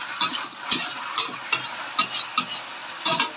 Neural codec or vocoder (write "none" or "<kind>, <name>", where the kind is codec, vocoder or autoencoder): none